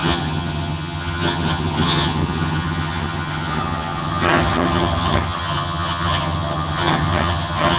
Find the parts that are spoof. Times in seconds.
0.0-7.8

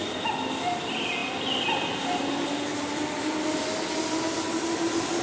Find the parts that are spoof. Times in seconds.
none